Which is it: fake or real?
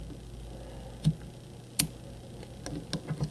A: real